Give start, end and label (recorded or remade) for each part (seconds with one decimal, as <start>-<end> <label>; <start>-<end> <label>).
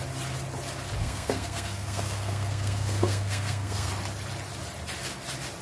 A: 0.0-1.0 recorded; 1.0-3.9 remade; 3.9-5.6 recorded